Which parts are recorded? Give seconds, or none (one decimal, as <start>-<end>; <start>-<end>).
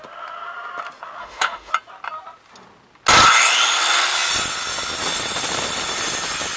0.0-1.2; 1.7-6.6